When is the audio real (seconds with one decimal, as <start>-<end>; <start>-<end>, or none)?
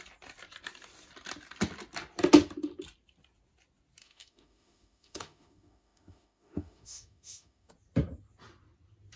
0.0-4.0; 7.7-9.2